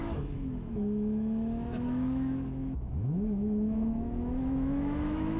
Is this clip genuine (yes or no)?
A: no